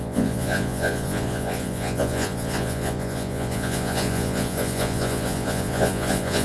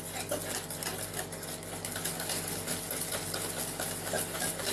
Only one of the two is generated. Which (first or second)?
first